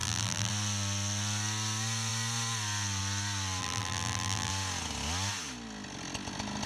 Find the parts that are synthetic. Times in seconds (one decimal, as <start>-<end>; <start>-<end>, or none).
0.0-0.5; 3.6-4.5